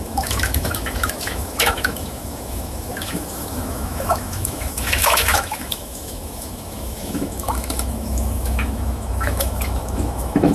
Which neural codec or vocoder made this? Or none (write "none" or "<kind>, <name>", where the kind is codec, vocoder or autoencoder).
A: autoencoder, DAC-VAE